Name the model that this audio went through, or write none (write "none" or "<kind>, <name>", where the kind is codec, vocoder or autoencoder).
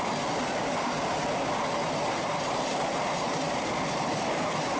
none